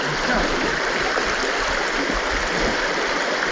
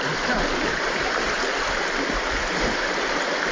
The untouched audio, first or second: first